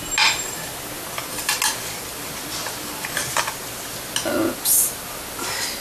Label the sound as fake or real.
real